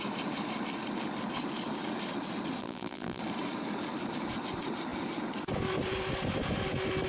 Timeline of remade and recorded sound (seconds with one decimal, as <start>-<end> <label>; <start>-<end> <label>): 0.0-2.6 recorded; 2.6-3.2 remade; 3.2-7.1 recorded